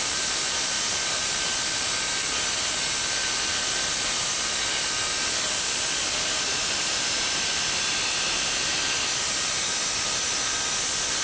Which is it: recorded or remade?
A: recorded